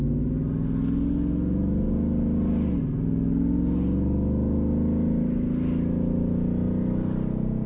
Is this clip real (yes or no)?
yes